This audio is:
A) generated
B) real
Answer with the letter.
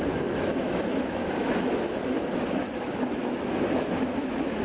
A